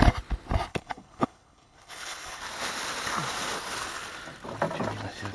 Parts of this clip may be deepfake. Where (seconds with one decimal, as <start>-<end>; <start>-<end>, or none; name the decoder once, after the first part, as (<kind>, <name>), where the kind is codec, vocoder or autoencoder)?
0.7-2.4 (codec, HILCodec)